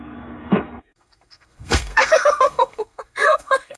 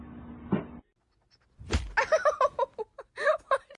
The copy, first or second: first